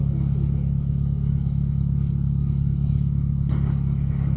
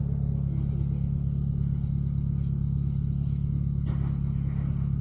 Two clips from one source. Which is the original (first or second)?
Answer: second